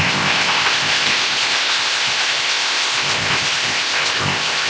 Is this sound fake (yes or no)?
yes